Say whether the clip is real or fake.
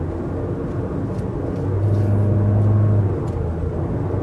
real